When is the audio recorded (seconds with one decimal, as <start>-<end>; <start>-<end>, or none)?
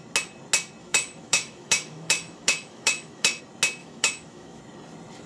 0.0-0.8; 3.4-3.8; 4.6-5.3